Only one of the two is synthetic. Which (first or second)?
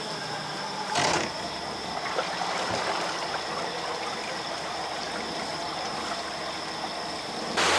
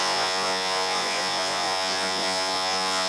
second